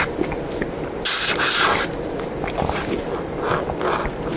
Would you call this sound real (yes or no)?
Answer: yes